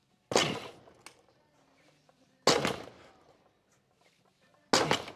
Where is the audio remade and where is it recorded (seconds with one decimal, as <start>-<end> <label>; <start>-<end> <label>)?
0.0-5.2 recorded